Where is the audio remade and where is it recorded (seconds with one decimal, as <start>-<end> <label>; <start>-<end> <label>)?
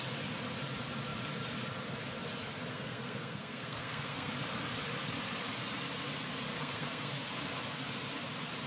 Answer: 0.0-2.7 recorded; 2.7-4.3 remade; 4.3-6.5 recorded; 6.5-7.3 remade; 7.3-8.7 recorded